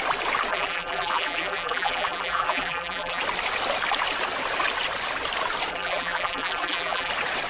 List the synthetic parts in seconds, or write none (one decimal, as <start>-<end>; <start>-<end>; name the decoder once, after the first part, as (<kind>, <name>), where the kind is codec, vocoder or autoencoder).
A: 0.5-3.2 (vocoder, BigVGAN v2); 5.7-7.1